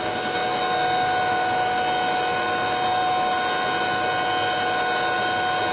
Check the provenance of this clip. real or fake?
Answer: real